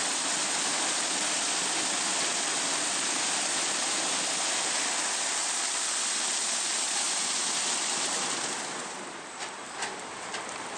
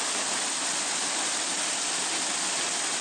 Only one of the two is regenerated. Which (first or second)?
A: first